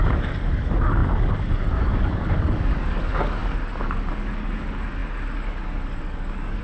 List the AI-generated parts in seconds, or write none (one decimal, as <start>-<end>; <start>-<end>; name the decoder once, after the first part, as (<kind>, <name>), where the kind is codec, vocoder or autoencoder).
0.0-6.6 (codec, DAC)